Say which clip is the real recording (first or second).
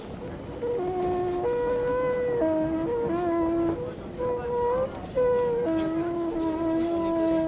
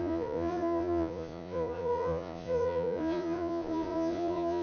first